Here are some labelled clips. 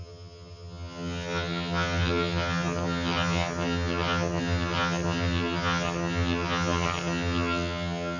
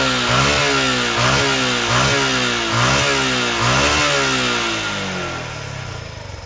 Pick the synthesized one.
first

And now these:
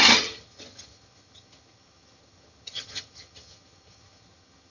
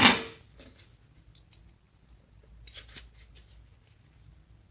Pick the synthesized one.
first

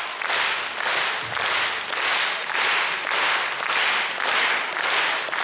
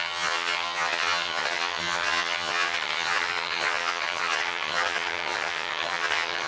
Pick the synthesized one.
second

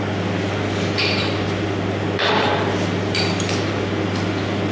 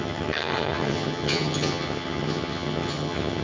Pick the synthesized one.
second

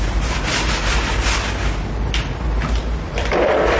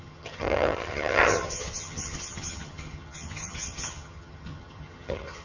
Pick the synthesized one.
second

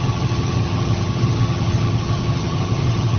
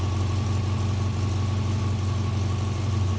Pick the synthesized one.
first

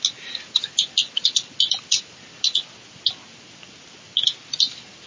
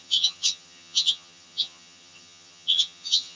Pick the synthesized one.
second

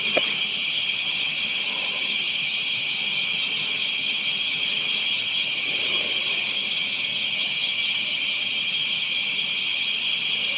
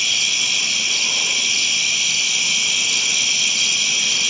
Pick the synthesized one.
first